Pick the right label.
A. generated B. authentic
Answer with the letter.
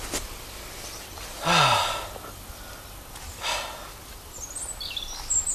B